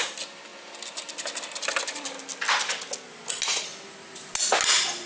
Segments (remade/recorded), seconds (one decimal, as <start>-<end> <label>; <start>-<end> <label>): 0.0-5.1 recorded